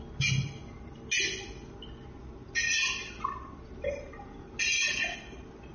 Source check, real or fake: real